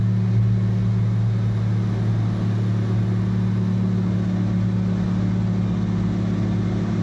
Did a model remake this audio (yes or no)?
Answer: no